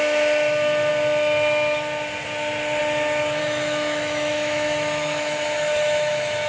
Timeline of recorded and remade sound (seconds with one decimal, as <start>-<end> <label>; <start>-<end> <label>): 0.0-3.4 recorded; 3.4-6.5 remade

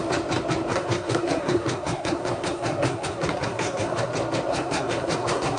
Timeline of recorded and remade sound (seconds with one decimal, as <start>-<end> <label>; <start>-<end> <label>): 0.0-0.7 recorded; 0.7-4.1 remade; 4.1-4.5 recorded; 4.5-5.6 remade

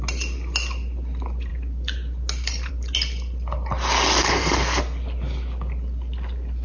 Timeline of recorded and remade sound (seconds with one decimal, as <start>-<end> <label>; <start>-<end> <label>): 0.0-4.2 recorded; 4.2-4.8 remade; 4.8-6.6 recorded

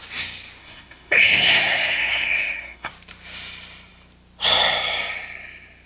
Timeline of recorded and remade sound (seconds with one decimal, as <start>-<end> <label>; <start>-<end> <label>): 0.0-0.6 recorded; 0.6-2.9 remade; 2.9-5.9 recorded

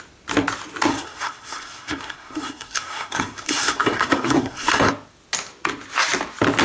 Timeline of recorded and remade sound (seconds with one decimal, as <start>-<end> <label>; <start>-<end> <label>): 0.0-0.9 recorded; 0.9-4.9 remade; 4.9-6.6 recorded